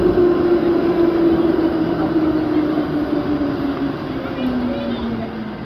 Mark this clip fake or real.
real